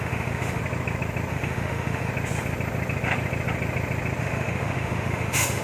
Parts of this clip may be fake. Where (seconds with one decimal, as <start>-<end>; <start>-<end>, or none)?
0.0-0.6; 1.3-2.1; 4.2-5.6